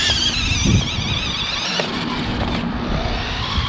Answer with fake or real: real